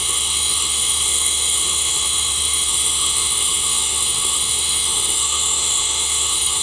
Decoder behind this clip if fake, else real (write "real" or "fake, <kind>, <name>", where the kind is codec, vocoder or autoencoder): fake, autoencoder, DAC-VAE